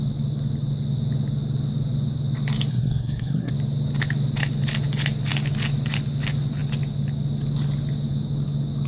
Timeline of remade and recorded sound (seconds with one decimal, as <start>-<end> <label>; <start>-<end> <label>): 0.0-2.7 recorded; 2.7-3.5 remade; 3.5-8.9 recorded